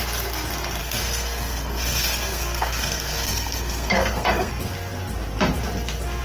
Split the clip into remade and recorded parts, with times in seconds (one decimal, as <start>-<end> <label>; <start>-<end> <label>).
0.0-0.8 recorded; 0.8-4.5 remade; 4.5-6.2 recorded